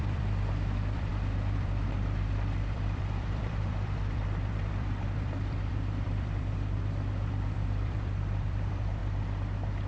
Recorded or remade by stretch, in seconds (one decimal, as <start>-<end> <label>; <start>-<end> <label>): 0.0-9.0 remade; 9.0-9.9 recorded